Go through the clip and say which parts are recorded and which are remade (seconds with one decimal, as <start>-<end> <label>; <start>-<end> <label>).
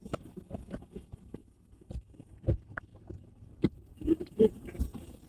0.0-2.9 recorded; 2.9-4.8 remade; 4.8-5.3 recorded